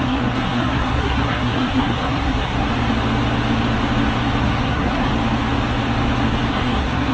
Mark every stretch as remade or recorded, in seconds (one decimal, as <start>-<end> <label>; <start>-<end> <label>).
0.0-2.7 remade; 2.7-4.4 recorded; 4.4-5.1 remade; 5.1-6.5 recorded; 6.5-7.1 remade